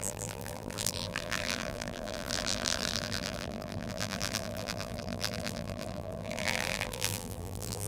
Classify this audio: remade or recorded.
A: remade